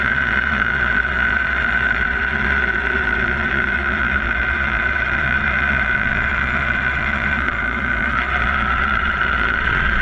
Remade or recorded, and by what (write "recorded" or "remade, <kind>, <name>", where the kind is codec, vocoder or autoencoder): remade, vocoder, Vocos